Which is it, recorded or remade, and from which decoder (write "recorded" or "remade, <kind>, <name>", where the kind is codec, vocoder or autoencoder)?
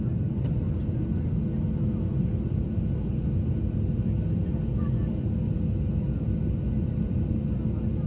recorded